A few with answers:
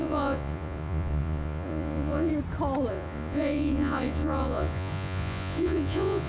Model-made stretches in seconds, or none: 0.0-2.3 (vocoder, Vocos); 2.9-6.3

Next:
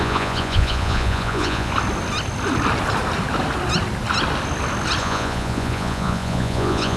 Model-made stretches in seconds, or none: 0.0-1.7 (vocoder, Vocos); 5.0-7.0

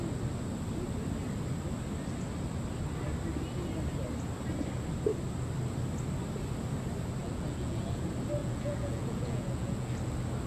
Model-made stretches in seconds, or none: 7.2-8.0 (vocoder, Vocos); 8.4-9.9

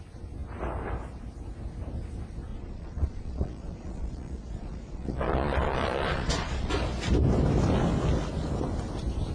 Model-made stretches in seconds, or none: 2.5-6.7 (vocoder, Vocos)

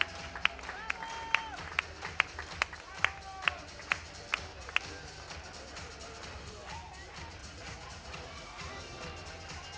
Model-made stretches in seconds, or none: 7.4-8.7 (vocoder, Vocos)

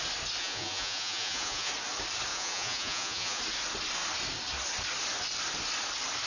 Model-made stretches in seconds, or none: 0.4-1.7 (vocoder, Vocos); 2.3-3.4

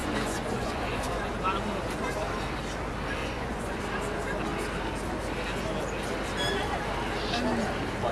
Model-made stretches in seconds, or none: 0.0-1.3 (vocoder, Vocos); 3.2-3.8